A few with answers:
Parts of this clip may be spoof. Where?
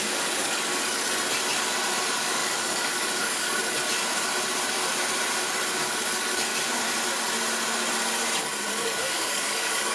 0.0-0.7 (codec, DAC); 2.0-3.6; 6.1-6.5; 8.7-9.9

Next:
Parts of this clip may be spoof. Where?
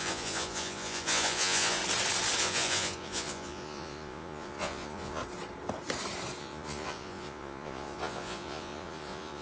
0.0-1.8 (vocoder, Vocos); 2.4-5.2; 6.4-9.4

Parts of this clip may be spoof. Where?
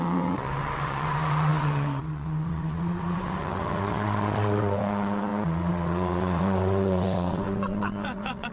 0.0-8.5 (vocoder, WaveNeXt)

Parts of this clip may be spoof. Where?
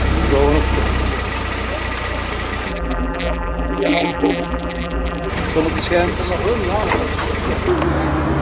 2.7-5.3 (vocoder, BigVGAN v2)